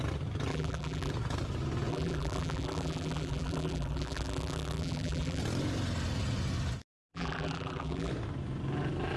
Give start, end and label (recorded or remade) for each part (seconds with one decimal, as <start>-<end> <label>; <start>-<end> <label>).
0.0-0.5 recorded; 0.5-1.1 remade; 1.1-1.9 recorded; 1.9-5.4 remade; 5.4-7.1 recorded; 7.1-8.1 remade; 8.1-9.2 recorded